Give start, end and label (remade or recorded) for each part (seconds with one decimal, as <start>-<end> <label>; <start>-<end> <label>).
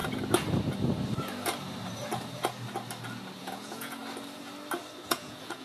0.0-3.4 recorded; 3.4-4.0 remade; 4.0-5.1 recorded; 5.1-5.6 remade